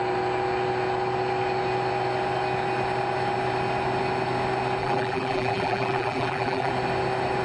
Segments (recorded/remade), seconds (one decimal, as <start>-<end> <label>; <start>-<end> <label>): 0.0-4.8 recorded; 4.8-6.7 remade; 6.7-7.4 recorded